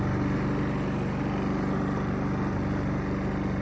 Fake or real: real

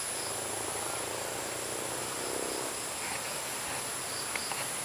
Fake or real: real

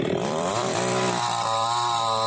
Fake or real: fake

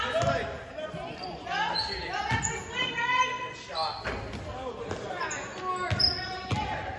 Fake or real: real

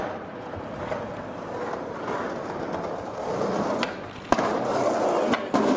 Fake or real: real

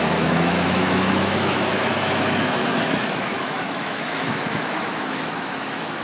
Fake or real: fake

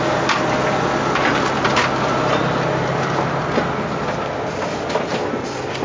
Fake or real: real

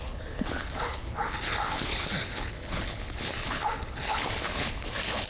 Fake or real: fake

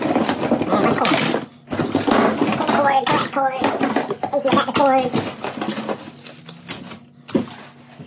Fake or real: real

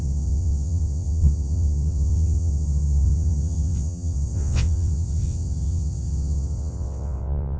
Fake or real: fake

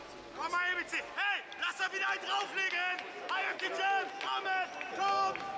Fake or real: real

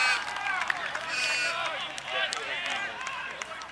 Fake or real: real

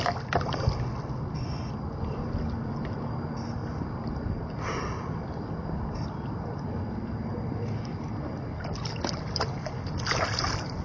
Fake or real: real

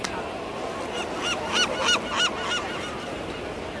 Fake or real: real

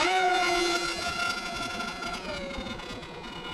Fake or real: fake